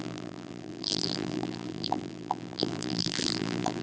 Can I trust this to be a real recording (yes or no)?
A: no